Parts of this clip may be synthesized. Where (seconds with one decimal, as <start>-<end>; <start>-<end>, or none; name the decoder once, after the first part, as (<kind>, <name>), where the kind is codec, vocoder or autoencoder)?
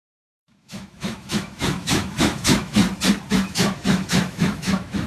0.0-2.8 (autoencoder, DAC-VAE); 3.3-5.1